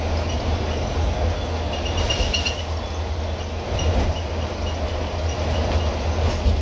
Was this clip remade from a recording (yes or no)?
no